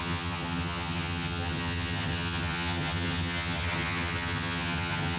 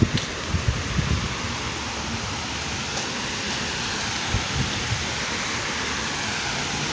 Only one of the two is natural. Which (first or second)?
second